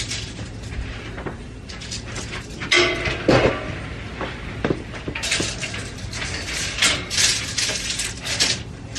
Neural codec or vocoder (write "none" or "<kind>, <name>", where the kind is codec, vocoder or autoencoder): none